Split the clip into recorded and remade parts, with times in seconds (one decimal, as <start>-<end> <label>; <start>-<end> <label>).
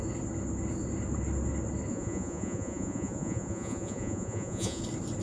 0.0-1.9 recorded; 1.9-4.8 remade; 4.8-5.2 recorded